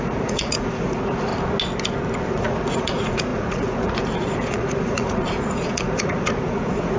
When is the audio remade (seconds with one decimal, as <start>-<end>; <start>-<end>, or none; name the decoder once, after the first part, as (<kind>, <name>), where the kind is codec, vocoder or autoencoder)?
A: 0.0-1.3 (vocoder, Vocos); 2.3-7.0